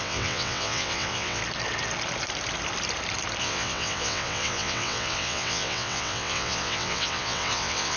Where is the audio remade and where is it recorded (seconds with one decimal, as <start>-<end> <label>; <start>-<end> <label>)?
0.0-1.4 remade; 1.4-3.4 recorded; 3.4-8.0 remade